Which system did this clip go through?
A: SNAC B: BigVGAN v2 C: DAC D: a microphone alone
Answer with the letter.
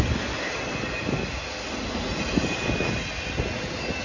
D